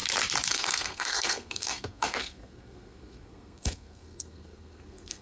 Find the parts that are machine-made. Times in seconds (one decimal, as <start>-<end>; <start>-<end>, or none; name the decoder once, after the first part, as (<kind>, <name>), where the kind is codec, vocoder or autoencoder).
0.5-5.2 (codec, SNAC)

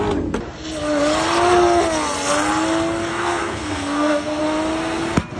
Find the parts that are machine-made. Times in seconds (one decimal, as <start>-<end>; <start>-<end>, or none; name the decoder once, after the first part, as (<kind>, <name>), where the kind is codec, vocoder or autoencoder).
3.1-4.4 (codec, SNAC)

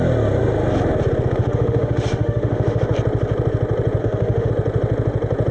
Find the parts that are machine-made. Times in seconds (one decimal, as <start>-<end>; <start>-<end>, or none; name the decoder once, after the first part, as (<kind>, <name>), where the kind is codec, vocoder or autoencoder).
1.4-2.8 (autoencoder, DAC-VAE); 4.0-4.5

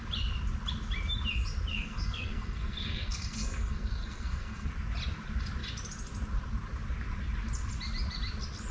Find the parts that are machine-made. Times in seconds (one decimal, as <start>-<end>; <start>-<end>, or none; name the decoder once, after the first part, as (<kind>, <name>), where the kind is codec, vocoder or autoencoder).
1.7-4.7 (codec, SNAC)

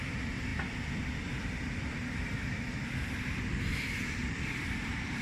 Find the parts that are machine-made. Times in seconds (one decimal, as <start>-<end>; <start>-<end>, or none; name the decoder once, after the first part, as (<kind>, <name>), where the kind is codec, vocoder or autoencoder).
0.0-5.2 (vocoder, BigVGAN v2)

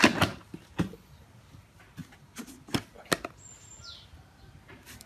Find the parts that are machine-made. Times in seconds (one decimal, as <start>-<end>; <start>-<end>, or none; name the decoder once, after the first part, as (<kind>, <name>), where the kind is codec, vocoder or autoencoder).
none

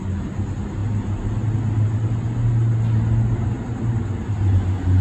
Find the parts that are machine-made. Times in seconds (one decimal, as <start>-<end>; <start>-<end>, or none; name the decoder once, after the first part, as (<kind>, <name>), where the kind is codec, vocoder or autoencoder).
none